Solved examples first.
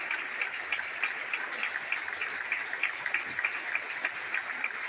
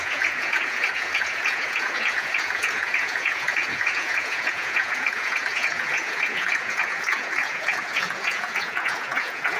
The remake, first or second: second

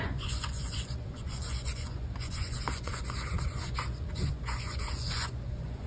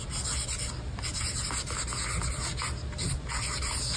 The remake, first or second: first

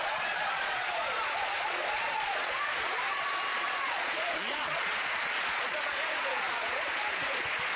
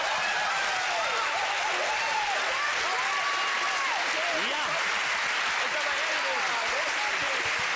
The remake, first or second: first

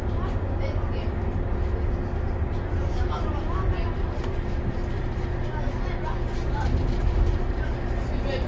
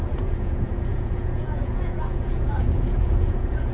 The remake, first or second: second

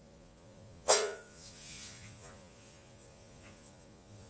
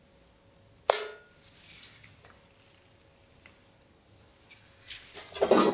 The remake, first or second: first